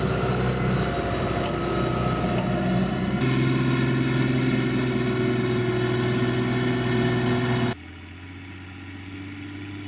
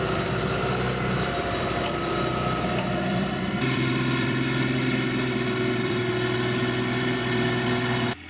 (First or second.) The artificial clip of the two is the second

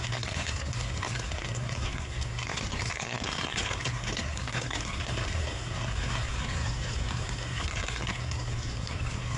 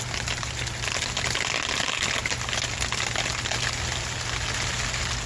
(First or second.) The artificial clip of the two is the first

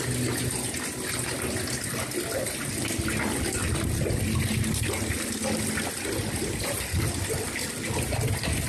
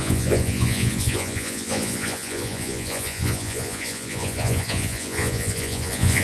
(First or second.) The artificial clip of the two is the second